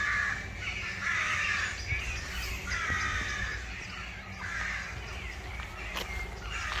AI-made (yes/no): no